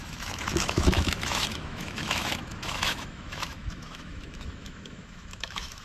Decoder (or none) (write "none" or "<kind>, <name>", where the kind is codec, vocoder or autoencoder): autoencoder, DAC-VAE